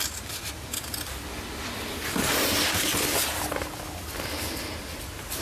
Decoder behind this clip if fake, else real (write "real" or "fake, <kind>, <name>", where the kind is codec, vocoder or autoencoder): real